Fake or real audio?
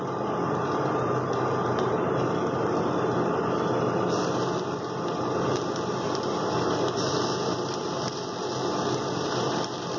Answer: fake